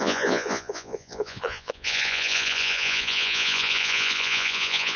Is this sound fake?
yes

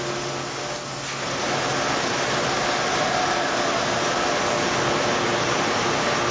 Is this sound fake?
no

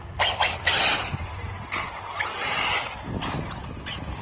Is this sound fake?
no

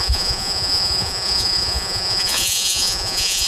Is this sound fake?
yes